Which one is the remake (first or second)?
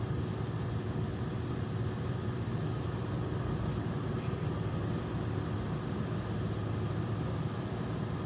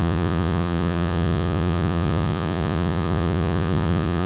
second